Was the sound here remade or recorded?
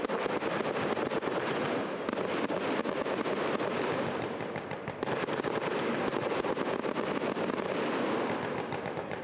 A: recorded